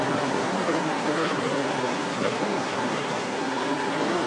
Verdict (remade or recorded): remade